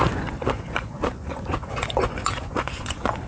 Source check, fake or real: fake